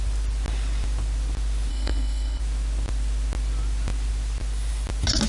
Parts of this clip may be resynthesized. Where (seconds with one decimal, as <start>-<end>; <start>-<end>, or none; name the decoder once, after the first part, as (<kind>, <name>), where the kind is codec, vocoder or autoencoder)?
1.7-2.4 (codec, HILCodec)